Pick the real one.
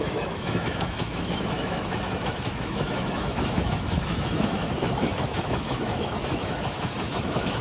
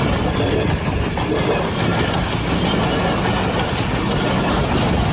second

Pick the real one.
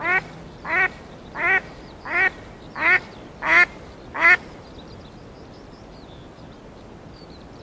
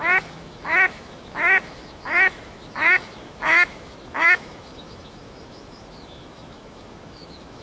first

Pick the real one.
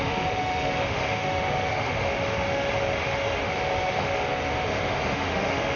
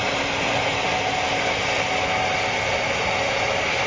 second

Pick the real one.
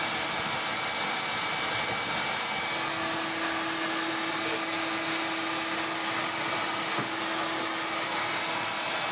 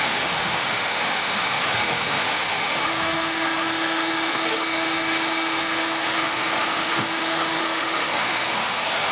first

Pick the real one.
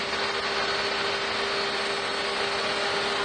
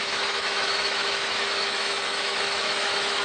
first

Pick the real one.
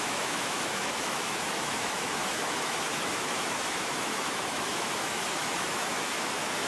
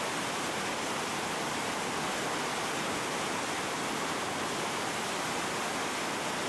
second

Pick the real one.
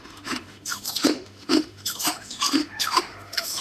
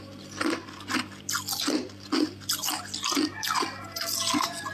second